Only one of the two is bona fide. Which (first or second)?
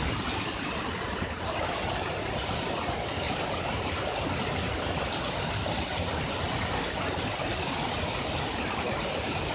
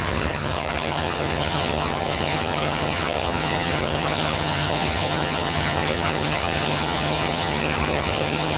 first